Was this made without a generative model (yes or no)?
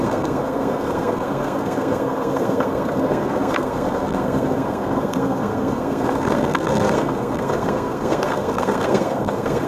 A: no